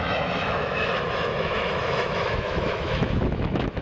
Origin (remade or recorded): remade